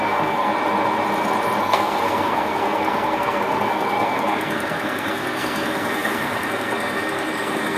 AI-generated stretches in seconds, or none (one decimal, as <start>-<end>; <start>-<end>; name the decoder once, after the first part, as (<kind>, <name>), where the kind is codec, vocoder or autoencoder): 0.0-0.5 (codec, SNAC); 1.6-7.8